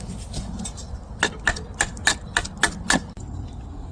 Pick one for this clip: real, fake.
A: real